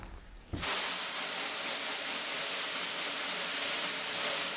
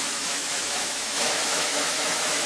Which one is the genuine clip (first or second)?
first